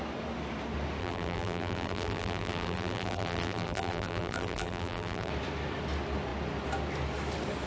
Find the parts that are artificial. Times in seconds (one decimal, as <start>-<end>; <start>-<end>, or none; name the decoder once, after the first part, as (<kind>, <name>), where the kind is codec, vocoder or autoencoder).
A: 1.0-5.3 (vocoder, BigVGAN v2)